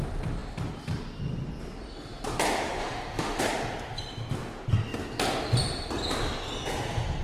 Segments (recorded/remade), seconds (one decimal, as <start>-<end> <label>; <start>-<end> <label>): 0.0-2.8 recorded; 2.8-3.4 remade; 3.4-7.2 recorded

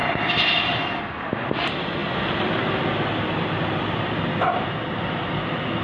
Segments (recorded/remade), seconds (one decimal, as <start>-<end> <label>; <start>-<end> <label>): 0.0-0.6 remade; 0.6-5.8 recorded

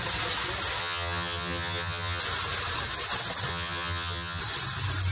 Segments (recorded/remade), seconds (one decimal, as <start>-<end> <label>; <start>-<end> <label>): 0.0-0.8 recorded; 0.8-2.2 remade; 2.2-3.5 recorded; 3.5-4.4 remade; 4.4-5.1 recorded

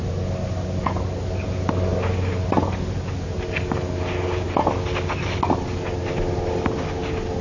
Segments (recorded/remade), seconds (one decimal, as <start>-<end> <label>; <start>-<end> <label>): 0.0-7.4 recorded

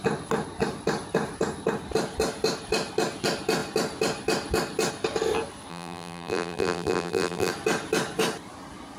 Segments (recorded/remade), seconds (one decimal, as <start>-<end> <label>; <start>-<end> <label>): 0.0-5.7 recorded; 5.7-7.5 remade; 7.5-9.0 recorded

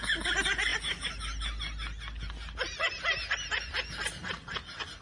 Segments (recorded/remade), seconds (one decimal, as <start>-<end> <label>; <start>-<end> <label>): 0.0-5.0 recorded

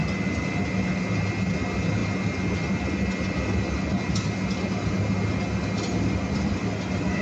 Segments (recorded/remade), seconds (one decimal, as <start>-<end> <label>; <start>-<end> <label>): 0.0-7.2 recorded